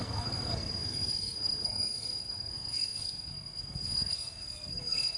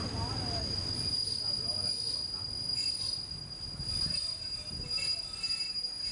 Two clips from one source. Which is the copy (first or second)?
first